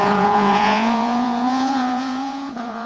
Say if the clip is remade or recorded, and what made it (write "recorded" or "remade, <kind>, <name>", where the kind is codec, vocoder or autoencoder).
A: remade, vocoder, Vocos